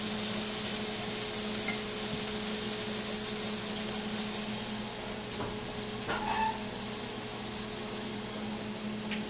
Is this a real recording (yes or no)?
yes